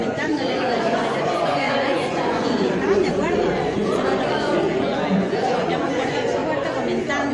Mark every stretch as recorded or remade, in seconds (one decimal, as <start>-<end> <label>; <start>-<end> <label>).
0.0-6.4 remade; 6.4-7.3 recorded